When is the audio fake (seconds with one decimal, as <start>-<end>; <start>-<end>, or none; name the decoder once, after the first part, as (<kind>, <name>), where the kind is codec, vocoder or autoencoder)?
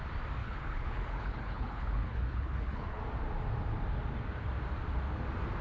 0.4-3.0 (codec, HILCodec)